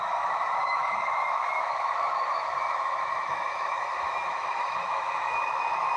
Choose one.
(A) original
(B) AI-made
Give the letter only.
B